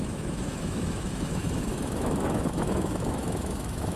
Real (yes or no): no